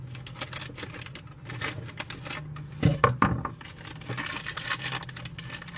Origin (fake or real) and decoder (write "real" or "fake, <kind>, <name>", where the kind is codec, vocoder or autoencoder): real